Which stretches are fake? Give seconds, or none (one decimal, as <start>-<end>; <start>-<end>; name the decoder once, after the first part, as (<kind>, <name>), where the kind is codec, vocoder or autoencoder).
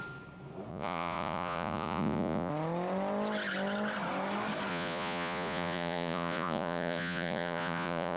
0.7-2.5 (vocoder, Vocos); 4.7-8.2